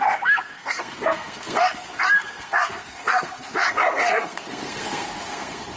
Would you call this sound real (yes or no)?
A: no